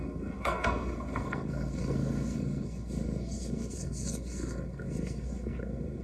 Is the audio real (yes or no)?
no